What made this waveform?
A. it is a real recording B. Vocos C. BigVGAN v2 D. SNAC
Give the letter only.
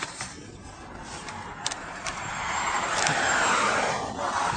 C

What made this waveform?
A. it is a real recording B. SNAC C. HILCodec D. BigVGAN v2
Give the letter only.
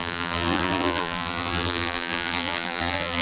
D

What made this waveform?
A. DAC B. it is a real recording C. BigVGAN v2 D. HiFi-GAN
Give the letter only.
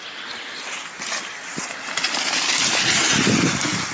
B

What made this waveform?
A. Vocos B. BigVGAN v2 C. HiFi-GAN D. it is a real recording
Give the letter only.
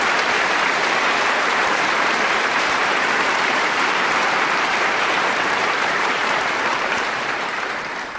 B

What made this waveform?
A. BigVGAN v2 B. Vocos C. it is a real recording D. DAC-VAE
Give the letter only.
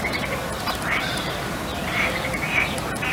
A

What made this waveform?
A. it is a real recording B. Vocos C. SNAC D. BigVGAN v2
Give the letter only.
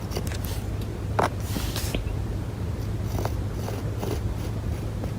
A